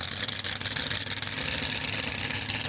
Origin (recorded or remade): recorded